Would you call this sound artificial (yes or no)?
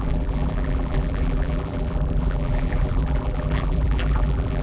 yes